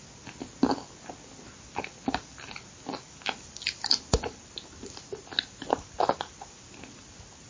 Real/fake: real